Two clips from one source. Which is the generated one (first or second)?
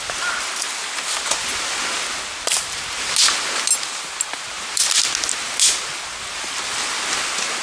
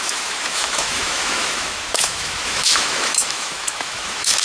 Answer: second